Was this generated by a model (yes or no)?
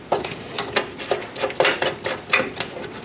no